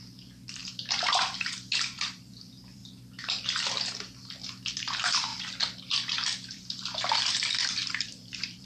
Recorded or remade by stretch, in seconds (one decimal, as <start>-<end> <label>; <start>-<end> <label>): 0.0-0.6 remade; 0.6-1.8 recorded; 1.8-2.8 remade; 2.8-4.7 recorded; 4.7-5.3 remade; 5.3-5.8 recorded; 5.8-8.7 remade